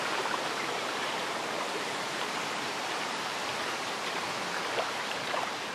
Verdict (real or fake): fake